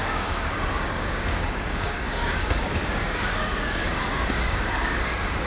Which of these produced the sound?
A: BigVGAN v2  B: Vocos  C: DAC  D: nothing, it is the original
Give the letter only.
C